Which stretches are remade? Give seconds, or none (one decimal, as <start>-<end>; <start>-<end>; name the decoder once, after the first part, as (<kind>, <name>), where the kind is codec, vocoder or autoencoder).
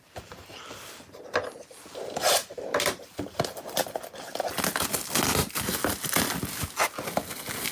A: 2.4-3.3 (vocoder, BigVGAN v2)